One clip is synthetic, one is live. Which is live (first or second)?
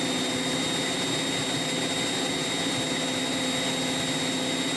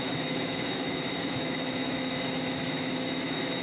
first